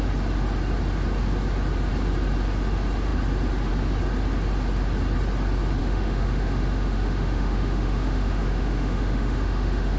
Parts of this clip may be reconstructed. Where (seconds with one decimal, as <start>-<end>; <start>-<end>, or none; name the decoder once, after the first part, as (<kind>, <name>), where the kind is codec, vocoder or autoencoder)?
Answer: 5.8-10.0 (autoencoder, DAC-VAE)